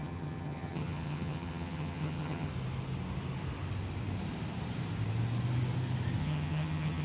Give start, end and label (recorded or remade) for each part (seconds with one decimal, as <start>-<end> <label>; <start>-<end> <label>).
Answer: 0.0-2.5 remade; 2.5-6.2 recorded; 6.2-7.0 remade